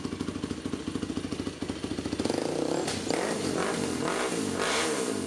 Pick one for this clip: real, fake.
real